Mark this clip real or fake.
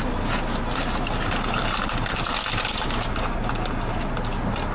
real